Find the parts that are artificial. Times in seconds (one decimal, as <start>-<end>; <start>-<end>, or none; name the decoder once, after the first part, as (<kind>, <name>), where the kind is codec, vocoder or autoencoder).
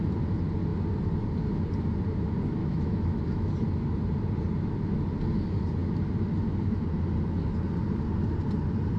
2.6-3.5 (autoencoder, DAC-VAE)